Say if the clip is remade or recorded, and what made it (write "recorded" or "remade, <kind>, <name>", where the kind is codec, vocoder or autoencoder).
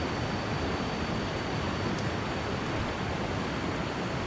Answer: recorded